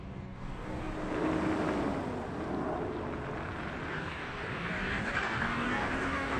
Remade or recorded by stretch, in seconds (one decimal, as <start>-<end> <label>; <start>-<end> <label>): 0.0-0.9 remade; 0.9-3.9 recorded; 3.9-6.4 remade